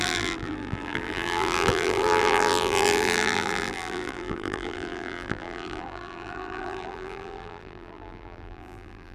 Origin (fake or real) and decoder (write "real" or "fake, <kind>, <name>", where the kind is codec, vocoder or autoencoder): fake, vocoder, BigVGAN v2